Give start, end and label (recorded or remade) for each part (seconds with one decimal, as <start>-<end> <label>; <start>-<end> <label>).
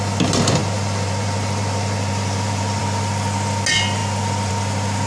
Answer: 0.0-0.6 recorded; 0.6-2.8 remade; 2.8-5.1 recorded